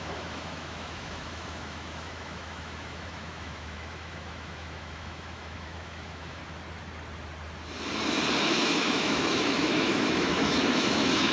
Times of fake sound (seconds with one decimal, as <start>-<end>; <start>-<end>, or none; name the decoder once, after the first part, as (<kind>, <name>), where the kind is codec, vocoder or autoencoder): 0.0-6.4 (autoencoder, DAC-VAE); 8.4-11.3